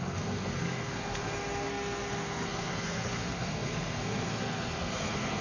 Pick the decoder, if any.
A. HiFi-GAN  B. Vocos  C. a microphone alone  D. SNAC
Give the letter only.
D